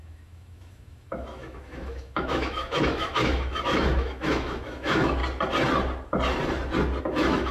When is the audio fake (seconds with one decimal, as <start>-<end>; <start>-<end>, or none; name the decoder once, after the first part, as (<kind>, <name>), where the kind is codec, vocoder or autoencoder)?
0.0-5.2 (autoencoder, DAC-VAE); 7.0-7.5